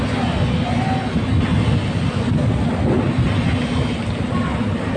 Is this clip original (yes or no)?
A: yes